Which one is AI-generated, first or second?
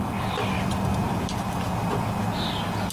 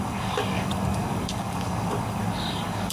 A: second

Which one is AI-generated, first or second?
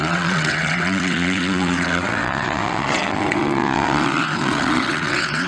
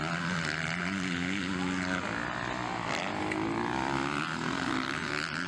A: first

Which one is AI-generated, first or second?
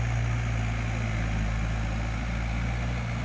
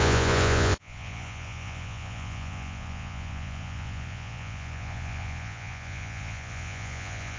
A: second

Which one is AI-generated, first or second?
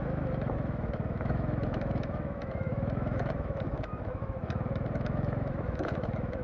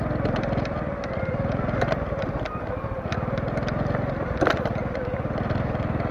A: first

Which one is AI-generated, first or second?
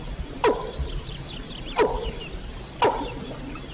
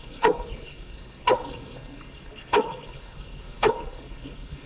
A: second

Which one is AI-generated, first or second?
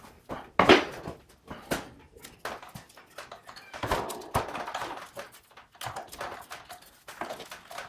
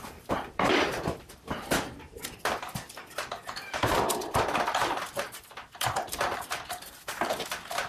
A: second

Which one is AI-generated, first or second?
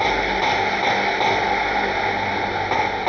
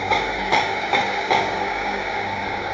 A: second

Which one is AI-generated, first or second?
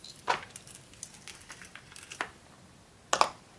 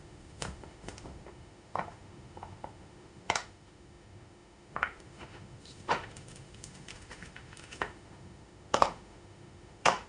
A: second